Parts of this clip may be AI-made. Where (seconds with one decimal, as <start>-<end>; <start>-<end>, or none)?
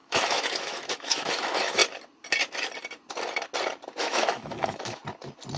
0.0-1.8; 4.0-5.0